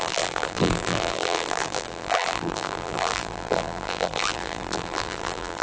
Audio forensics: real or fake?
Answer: fake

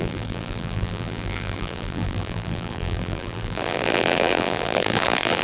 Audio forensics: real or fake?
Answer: fake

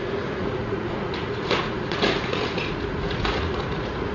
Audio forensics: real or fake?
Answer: fake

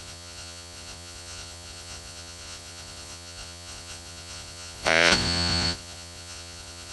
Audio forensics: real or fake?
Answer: fake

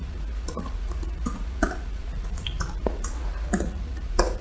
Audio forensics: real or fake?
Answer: fake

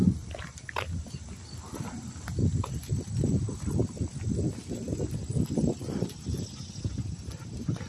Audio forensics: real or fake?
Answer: real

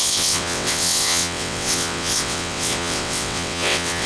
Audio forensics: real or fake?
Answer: fake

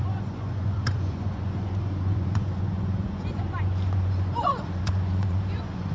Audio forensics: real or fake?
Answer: fake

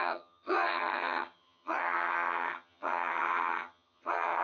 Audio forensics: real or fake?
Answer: fake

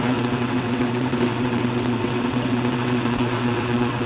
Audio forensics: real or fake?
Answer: fake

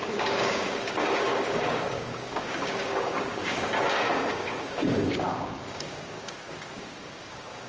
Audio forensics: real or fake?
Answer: fake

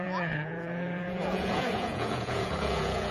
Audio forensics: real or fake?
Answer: fake